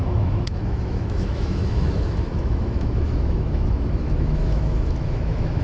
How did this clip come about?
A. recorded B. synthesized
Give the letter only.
B